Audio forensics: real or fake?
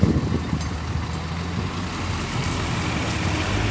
real